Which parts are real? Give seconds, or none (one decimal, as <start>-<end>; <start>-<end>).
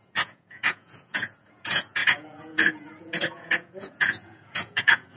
none